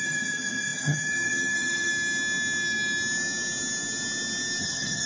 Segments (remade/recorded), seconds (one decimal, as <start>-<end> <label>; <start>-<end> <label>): 0.0-1.9 remade; 1.9-4.6 recorded; 4.6-5.1 remade